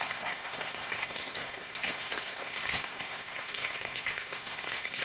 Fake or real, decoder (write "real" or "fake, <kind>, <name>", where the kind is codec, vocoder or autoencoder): fake, codec, SNAC